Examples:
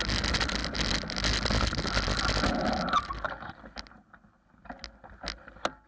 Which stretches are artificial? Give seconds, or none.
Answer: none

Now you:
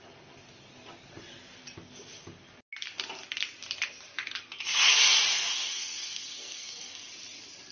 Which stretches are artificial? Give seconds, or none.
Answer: 5.3-7.1 (codec, SNAC)

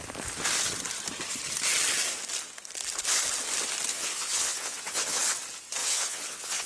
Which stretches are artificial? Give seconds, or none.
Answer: 3.9-5.2 (vocoder, WaveNeXt); 5.8-6.7

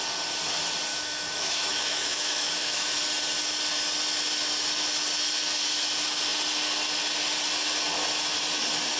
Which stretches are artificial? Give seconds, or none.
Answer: 0.9-3.0 (autoencoder, DAC-VAE)

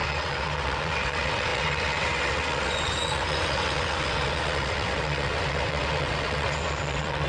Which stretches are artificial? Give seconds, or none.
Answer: 0.0-7.3 (vocoder, WaveNeXt)

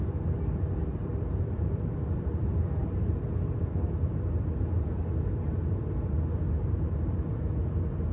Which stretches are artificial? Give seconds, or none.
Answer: 1.1-3.1 (vocoder, BigVGAN v2)

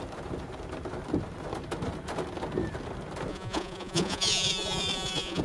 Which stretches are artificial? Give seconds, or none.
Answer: 3.3-5.4 (vocoder, Vocos)